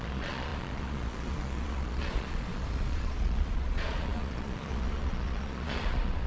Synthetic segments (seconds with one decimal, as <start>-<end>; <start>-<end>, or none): 0.0-6.3